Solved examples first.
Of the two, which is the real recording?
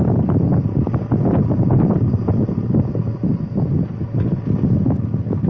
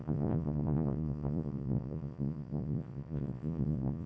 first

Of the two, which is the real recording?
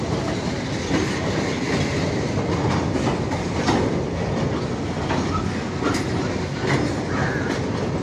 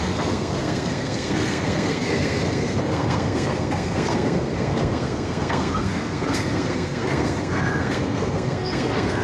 first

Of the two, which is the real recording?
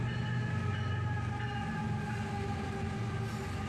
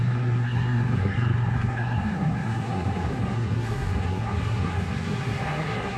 first